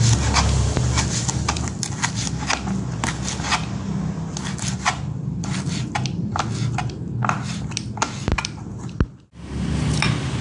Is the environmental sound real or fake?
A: real